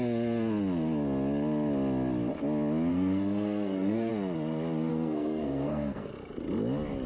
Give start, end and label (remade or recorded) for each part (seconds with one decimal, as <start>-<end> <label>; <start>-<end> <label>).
0.0-2.9 recorded; 2.9-4.1 remade; 4.1-4.9 recorded; 4.9-6.1 remade; 6.1-7.1 recorded